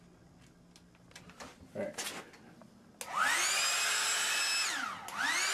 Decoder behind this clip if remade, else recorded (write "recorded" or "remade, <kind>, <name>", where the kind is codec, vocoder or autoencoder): recorded